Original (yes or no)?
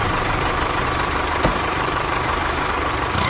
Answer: no